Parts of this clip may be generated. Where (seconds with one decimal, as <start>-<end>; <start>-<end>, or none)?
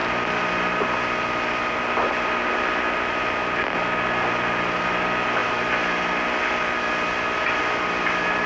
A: none